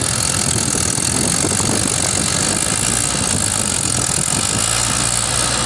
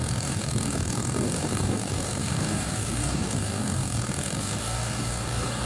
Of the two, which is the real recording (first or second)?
first